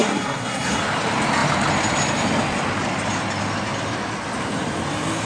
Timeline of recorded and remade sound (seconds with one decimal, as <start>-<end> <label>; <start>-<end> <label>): 0.0-0.8 remade; 0.8-5.3 recorded